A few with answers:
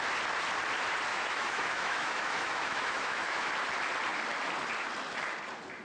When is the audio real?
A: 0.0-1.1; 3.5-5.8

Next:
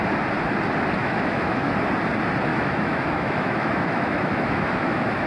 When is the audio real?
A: 0.0-1.0; 1.7-2.5

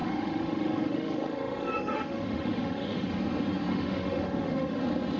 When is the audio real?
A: 3.1-3.7; 4.8-5.2